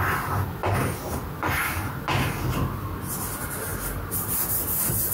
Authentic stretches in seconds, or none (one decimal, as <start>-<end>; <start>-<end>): 0.0-5.1